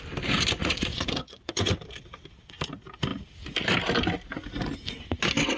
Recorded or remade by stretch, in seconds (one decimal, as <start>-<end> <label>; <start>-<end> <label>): 0.0-0.6 recorded; 0.6-1.7 remade; 1.7-5.6 recorded